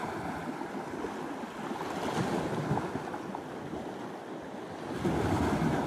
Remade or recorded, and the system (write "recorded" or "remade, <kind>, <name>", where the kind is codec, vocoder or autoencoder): recorded